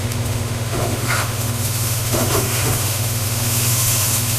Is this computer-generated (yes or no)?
yes